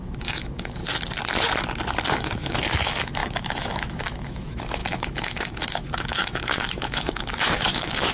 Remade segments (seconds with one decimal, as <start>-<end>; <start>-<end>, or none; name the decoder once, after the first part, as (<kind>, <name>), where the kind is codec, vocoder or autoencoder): 0.0-0.8 (autoencoder, DAC-VAE); 2.1-8.1